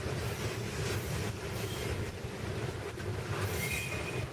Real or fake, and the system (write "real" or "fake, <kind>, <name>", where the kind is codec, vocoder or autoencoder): fake, vocoder, BigVGAN v2